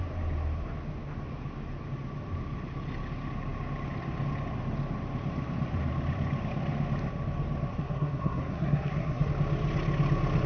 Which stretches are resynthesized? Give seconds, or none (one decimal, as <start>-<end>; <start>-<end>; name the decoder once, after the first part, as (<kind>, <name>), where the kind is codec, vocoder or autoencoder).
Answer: 7.7-9.3 (codec, SNAC)